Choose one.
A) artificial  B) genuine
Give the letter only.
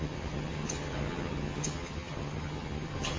A